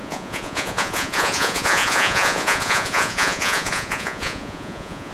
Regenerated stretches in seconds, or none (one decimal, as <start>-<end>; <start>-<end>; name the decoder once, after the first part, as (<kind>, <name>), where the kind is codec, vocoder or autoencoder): 0.0-5.1 (vocoder, Vocos)